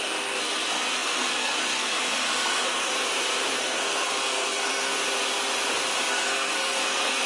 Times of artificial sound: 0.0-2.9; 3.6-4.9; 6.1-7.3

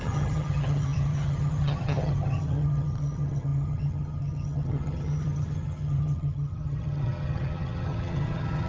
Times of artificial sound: 0.0-8.7

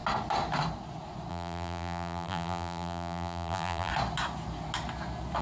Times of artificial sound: 1.3-3.9

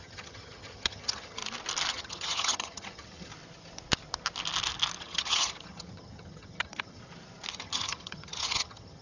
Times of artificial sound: 0.0-1.4; 1.9-3.3; 5.0-7.0; 7.5-9.0

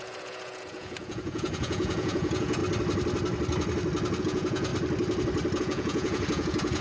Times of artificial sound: 0.0-2.6; 4.2-4.7; 5.6-6.8

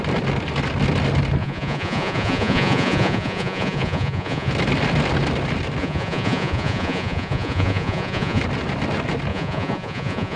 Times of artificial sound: 1.4-4.5; 5.8-8.4; 9.3-10.4